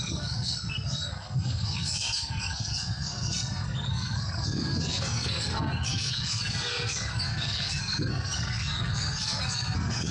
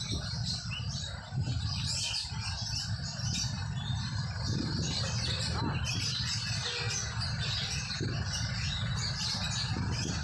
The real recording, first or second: second